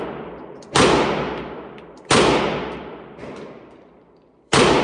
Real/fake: fake